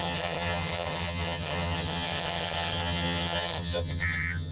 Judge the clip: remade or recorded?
remade